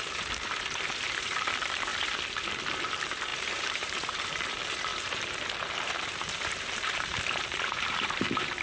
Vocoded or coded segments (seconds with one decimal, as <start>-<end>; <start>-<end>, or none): 0.0-1.9; 2.9-8.6